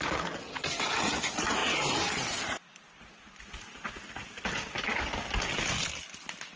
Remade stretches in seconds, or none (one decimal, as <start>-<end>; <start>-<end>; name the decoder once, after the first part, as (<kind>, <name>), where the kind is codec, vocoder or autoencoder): none